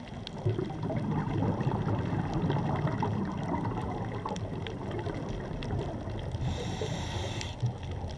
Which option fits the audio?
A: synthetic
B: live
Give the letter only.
B